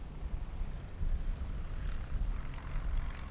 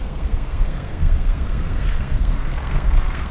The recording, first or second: first